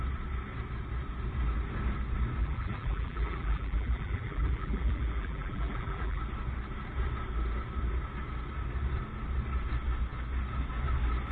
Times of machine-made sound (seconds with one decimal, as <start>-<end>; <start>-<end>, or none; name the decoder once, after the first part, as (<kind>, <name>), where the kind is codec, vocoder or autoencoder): 2.4-6.2 (vocoder, BigVGAN v2)